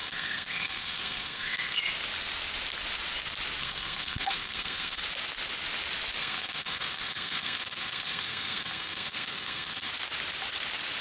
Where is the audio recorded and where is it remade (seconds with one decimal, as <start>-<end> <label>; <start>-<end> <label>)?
0.0-1.8 remade; 1.8-3.6 recorded; 3.6-5.0 remade; 5.0-6.2 recorded; 6.2-9.9 remade; 9.9-11.0 recorded